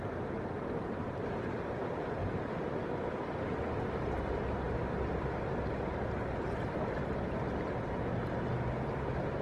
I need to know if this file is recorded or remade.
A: recorded